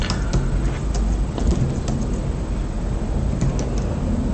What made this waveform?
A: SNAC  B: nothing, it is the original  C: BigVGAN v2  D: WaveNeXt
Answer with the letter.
B